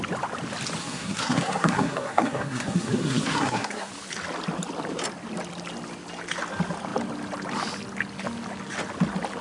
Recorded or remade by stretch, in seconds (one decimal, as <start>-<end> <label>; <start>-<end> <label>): 0.0-0.8 recorded; 0.8-3.9 remade; 3.9-9.4 recorded